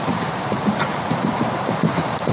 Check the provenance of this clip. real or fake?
fake